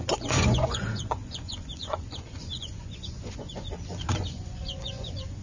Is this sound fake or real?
fake